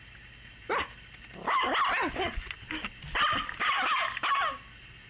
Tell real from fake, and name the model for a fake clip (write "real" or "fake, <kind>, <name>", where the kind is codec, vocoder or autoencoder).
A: real